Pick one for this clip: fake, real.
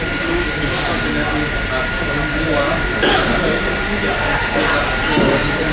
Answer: real